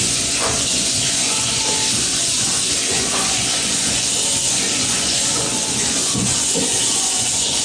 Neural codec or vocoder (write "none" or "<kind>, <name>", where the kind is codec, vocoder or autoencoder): vocoder, Vocos